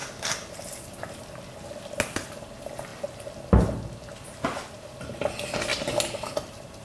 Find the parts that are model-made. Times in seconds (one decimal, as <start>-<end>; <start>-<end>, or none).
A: none